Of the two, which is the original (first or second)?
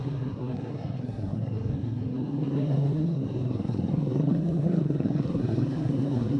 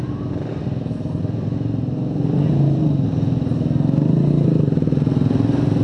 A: second